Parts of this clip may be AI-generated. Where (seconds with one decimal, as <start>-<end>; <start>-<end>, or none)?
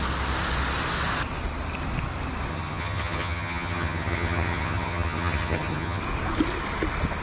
2.5-6.0